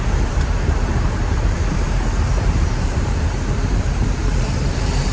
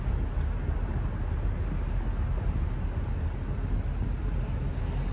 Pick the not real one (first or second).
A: first